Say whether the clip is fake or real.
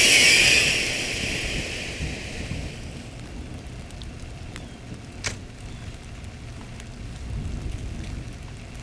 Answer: real